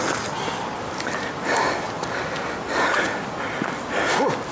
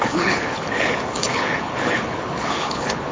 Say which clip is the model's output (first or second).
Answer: second